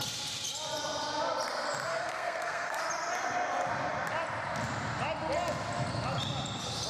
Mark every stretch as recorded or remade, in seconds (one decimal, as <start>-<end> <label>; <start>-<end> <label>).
0.0-1.9 recorded; 1.9-2.8 remade; 2.8-6.9 recorded